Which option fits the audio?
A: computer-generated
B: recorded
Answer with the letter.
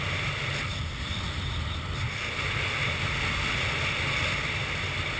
B